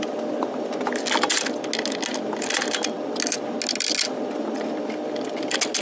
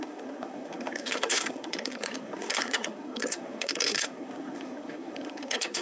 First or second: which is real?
first